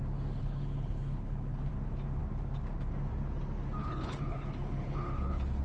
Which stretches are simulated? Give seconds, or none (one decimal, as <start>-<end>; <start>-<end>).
0.4-1.7; 3.8-5.6